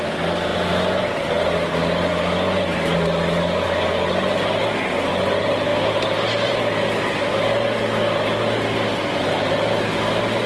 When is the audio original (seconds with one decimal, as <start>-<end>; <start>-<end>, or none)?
0.0-10.5